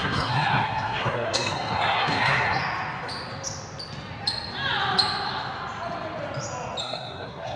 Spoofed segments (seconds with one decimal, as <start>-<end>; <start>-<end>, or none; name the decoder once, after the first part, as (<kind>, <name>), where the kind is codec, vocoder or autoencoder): 0.0-2.6 (codec, SNAC); 6.8-7.6

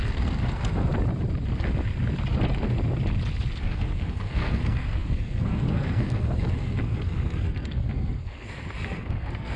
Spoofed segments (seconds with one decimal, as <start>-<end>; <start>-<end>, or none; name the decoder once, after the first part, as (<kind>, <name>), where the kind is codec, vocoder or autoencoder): 0.0-0.9 (codec, SNAC); 3.6-9.6

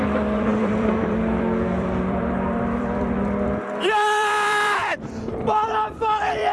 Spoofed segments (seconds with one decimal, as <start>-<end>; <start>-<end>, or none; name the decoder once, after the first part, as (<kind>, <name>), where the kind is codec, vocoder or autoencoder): 0.0-6.5 (vocoder, BigVGAN v2)

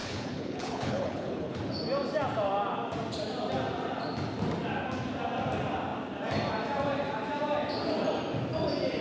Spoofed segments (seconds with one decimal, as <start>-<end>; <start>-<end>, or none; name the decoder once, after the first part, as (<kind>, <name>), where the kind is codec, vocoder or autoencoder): 0.0-1.6 (codec, HILCodec)